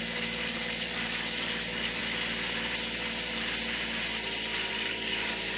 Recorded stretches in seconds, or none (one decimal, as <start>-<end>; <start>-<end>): 2.0-4.7